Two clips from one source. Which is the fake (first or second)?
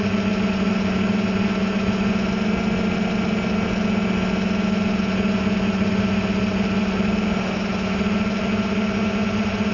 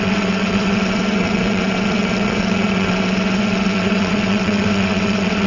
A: second